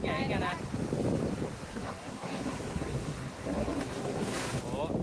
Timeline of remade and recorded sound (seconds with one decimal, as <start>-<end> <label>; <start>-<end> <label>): 0.0-1.7 recorded; 1.7-4.6 remade; 4.6-5.0 recorded